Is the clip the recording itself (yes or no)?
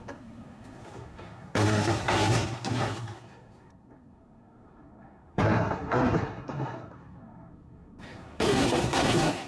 no